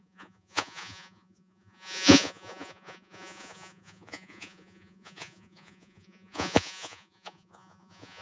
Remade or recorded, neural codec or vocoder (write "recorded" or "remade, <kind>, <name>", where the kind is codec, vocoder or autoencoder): remade, vocoder, Vocos